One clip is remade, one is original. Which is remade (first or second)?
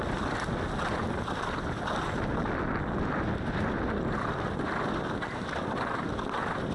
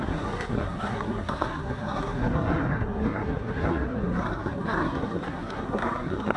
second